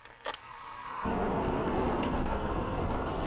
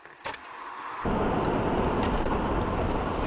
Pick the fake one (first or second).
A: first